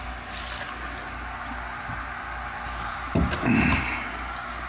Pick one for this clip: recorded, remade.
recorded